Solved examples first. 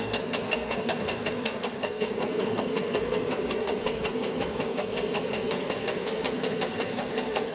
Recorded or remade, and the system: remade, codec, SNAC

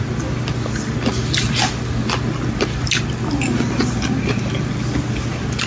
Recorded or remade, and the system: recorded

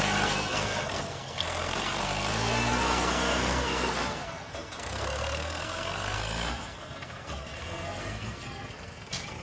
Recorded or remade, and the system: remade, codec, SNAC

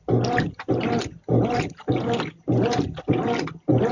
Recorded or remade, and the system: remade, vocoder, BigVGAN v2